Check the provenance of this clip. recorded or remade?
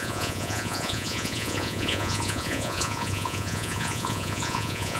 remade